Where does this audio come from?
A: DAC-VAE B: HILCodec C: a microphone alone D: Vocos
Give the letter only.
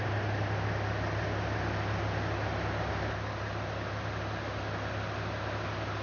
C